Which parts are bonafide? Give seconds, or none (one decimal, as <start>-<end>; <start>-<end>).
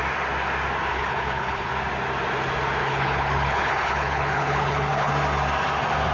0.0-0.9; 1.7-2.8; 5.1-6.1